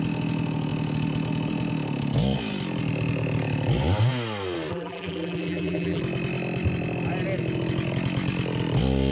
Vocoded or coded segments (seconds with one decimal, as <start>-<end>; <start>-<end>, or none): 4.7-6.0